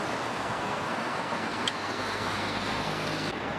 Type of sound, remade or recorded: remade